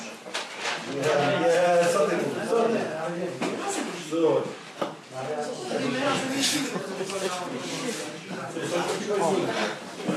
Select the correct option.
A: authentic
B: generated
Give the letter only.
A